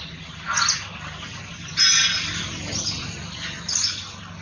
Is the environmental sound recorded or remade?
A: recorded